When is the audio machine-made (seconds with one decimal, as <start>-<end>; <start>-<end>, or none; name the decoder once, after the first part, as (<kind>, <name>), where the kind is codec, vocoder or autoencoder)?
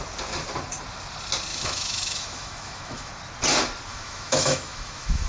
1.5-3.1 (autoencoder, DAC-VAE); 3.9-5.3